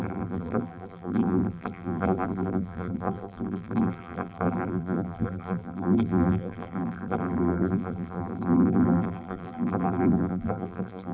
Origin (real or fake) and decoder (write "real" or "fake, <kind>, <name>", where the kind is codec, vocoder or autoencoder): fake, vocoder, BigVGAN v2